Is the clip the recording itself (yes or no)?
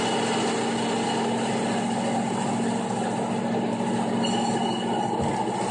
yes